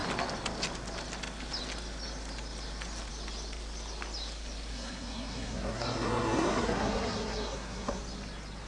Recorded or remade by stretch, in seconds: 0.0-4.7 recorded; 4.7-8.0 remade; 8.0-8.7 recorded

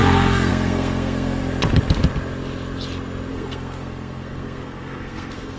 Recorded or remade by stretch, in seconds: 0.0-1.4 remade; 1.4-3.3 recorded; 3.3-5.6 remade

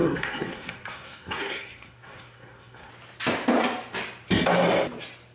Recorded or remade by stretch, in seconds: 0.0-2.9 remade; 2.9-5.3 recorded

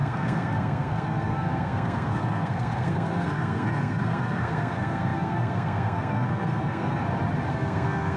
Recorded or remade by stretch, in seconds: 0.0-7.0 remade; 7.0-7.5 recorded; 7.5-8.2 remade

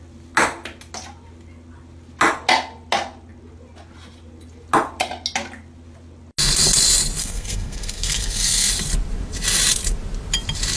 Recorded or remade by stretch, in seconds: 0.0-7.2 recorded; 7.2-8.7 remade; 8.7-10.8 recorded

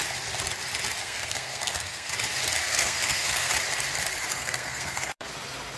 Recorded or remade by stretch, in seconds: 0.0-1.0 recorded; 1.0-2.1 remade; 2.1-2.6 recorded; 2.6-3.5 remade; 3.5-4.3 recorded; 4.3-5.3 remade; 5.3-5.8 recorded

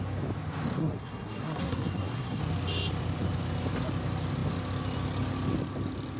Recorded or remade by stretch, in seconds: 0.0-0.8 recorded; 0.8-2.4 remade; 2.4-6.2 recorded

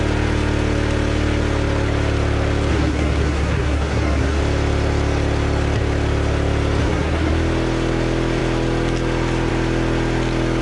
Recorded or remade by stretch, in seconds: 0.0-2.7 recorded; 2.7-4.4 remade; 4.4-6.8 recorded; 6.8-7.3 remade; 7.3-10.6 recorded